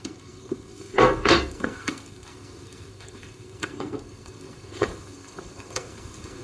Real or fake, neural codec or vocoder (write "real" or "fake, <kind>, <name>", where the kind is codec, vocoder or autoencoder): fake, codec, SNAC